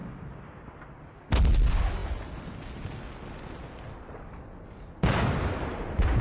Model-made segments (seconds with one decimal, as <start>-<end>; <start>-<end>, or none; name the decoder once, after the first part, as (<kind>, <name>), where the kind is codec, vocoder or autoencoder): none